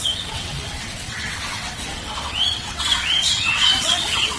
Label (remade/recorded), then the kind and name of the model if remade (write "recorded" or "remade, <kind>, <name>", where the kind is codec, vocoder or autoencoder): remade, vocoder, WaveNeXt